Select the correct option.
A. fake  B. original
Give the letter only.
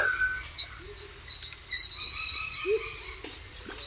B